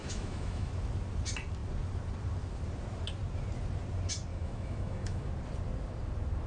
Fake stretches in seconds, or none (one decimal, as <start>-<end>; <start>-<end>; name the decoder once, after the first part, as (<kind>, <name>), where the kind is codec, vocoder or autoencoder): 0.0-0.7 (autoencoder, DAC-VAE); 4.3-5.3